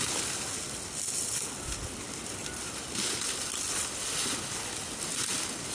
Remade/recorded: recorded